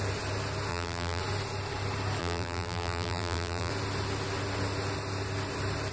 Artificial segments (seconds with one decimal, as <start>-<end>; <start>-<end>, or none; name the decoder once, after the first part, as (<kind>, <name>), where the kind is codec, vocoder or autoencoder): 0.7-1.2 (vocoder, BigVGAN v2); 2.2-3.7